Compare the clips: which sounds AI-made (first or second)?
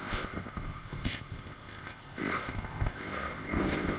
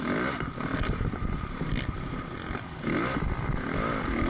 first